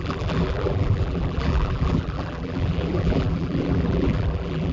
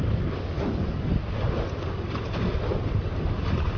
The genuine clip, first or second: second